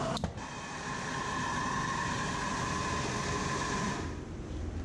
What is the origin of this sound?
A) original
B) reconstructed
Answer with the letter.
A